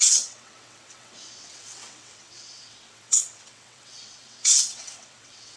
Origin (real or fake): fake